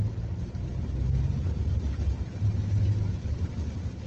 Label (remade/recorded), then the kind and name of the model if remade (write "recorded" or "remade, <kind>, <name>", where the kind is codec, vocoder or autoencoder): recorded